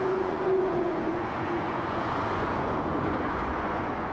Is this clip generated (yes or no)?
yes